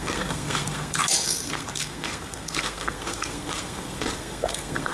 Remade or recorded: remade